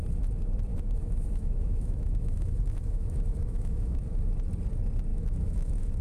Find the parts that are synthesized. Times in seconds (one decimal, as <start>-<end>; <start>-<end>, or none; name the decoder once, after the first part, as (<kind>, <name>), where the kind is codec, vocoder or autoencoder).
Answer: 0.7-4.0 (autoencoder, DAC-VAE); 5.1-6.0